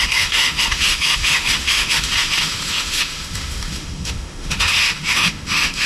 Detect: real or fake fake